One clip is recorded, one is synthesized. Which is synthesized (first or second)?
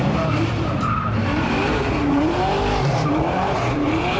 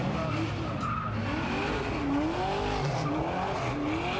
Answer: first